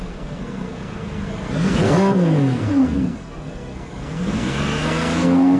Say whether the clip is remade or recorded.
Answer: remade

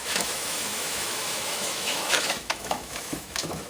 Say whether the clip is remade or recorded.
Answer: remade